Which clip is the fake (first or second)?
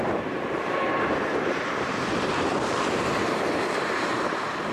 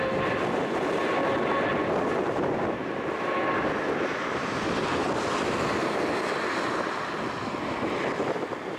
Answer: first